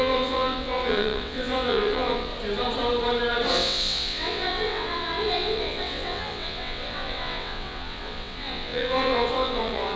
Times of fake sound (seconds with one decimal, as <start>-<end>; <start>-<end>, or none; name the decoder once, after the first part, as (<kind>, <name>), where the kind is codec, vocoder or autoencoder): 0.0-2.3 (vocoder, WaveNeXt); 3.5-10.0